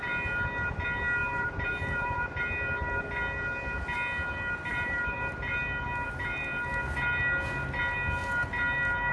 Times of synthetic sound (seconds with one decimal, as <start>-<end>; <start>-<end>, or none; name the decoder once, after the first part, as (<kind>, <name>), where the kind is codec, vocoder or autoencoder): 1.2-2.4 (vocoder, BigVGAN v2); 4.7-5.4

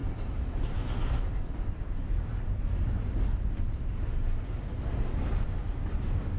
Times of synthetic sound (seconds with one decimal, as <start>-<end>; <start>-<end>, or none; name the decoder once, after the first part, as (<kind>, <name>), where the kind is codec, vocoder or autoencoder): none

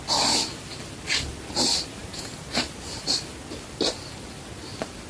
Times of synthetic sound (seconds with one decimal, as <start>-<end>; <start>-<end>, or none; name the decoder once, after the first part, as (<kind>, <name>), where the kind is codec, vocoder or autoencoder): none